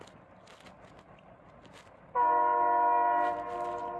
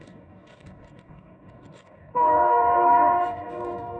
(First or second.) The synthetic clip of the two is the second